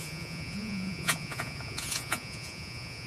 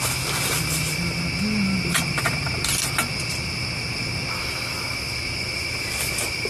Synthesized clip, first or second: first